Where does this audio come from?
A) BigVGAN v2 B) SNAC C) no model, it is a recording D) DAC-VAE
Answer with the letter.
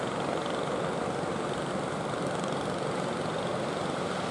C